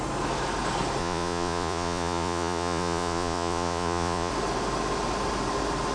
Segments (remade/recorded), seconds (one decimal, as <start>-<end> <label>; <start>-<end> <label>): 0.0-1.0 recorded; 1.0-4.3 remade; 4.3-5.9 recorded